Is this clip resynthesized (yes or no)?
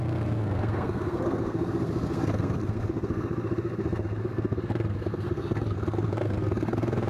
yes